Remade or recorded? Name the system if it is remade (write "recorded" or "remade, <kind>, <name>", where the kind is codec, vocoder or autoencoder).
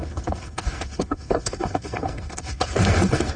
remade, codec, SNAC